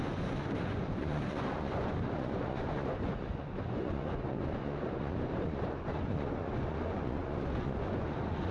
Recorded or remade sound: remade